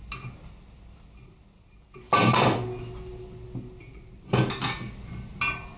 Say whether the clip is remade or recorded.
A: recorded